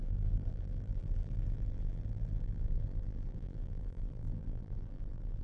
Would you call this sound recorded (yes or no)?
no